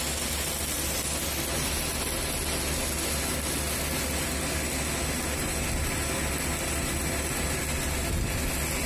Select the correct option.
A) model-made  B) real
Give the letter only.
B